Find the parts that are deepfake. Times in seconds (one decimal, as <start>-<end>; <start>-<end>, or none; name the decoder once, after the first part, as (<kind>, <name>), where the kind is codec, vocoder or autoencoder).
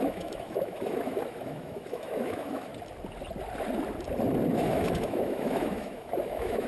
0.0-2.7 (autoencoder, DAC-VAE); 4.5-6.7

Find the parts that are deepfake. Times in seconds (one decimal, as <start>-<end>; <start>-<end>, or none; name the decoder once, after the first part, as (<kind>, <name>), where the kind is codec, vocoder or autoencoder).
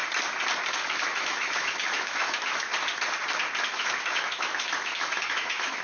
0.7-2.7 (autoencoder, DAC-VAE); 3.6-5.8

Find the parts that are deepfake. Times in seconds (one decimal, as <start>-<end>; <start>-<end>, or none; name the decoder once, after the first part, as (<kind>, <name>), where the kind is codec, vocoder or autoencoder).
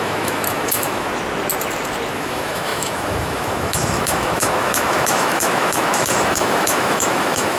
0.0-1.1 (autoencoder, DAC-VAE); 2.1-7.6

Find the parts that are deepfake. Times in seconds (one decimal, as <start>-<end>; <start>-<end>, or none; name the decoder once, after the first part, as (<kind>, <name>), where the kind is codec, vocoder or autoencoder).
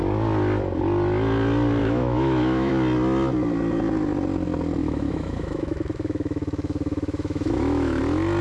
1.8-2.7 (autoencoder, DAC-VAE); 4.8-8.0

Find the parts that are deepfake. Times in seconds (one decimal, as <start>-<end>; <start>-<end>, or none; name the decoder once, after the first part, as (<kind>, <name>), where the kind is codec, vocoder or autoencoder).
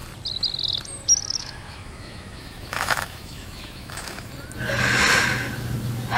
1.4-4.3 (autoencoder, DAC-VAE)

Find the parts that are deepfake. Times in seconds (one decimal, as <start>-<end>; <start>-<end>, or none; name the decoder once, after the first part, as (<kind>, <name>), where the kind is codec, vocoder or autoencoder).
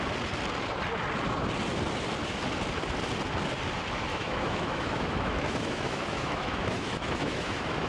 4.1-7.9 (autoencoder, DAC-VAE)